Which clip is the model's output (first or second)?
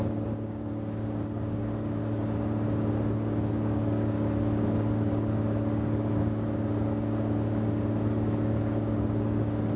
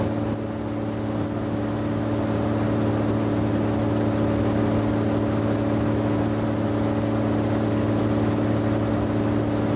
first